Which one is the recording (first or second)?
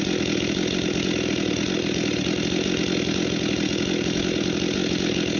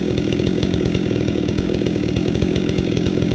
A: first